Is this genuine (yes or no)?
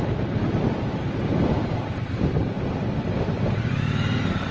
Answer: yes